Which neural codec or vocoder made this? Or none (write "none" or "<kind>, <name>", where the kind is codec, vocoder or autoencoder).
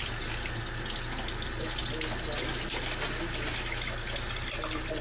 none